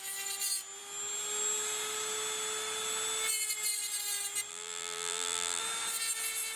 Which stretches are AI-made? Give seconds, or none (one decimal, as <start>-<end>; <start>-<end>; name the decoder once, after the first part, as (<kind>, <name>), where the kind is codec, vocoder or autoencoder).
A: 4.5-5.6 (vocoder, BigVGAN v2)